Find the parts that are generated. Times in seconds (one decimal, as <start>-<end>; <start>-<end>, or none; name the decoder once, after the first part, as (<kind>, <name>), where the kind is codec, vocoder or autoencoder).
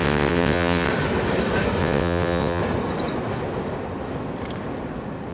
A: 0.0-0.9 (vocoder, WaveNeXt); 1.8-2.6